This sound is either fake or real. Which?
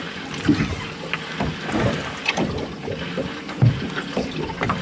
real